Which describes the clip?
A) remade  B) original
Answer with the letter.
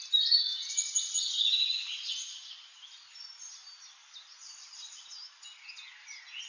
B